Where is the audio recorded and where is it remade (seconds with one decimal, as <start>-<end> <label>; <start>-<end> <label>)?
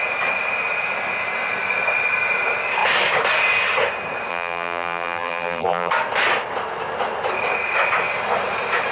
0.0-4.3 recorded; 4.3-5.9 remade; 5.9-8.9 recorded